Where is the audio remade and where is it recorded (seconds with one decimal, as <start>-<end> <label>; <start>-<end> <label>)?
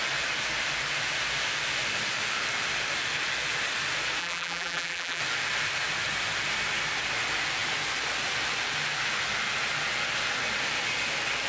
0.0-4.2 recorded; 4.2-5.2 remade; 5.2-11.5 recorded